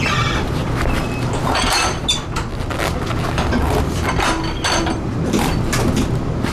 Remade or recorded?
recorded